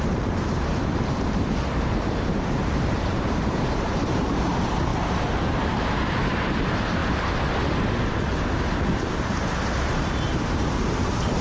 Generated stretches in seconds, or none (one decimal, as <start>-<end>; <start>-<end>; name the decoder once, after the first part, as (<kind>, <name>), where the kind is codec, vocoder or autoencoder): 0.0-7.0 (vocoder, BigVGAN v2); 9.1-11.4

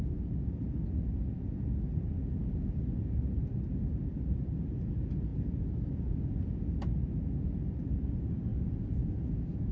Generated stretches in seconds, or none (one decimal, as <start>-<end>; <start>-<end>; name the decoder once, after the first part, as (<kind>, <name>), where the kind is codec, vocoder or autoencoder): 8.5-9.7 (vocoder, Vocos)

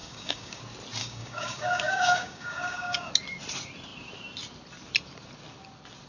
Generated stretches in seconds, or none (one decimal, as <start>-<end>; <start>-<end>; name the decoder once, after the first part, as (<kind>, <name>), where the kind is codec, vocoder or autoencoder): 0.0-0.6 (codec, DAC); 1.0-3.1

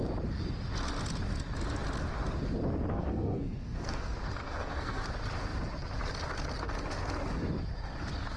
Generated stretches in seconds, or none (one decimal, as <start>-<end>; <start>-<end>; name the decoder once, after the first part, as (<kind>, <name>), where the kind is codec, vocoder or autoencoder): 2.9-5.1 (codec, SNAC)